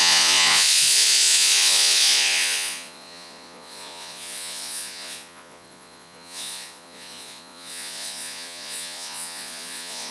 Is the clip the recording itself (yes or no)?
no